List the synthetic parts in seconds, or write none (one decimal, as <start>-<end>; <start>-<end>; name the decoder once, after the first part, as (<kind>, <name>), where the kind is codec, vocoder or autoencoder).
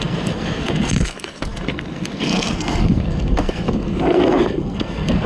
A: 0.0-5.3 (codec, SNAC)